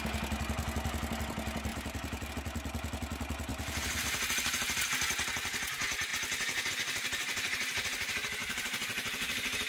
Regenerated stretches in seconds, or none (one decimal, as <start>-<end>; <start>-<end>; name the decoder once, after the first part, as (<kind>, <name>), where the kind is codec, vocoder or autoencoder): 1.7-2.3 (vocoder, BigVGAN v2); 3.5-4.9; 8.4-9.7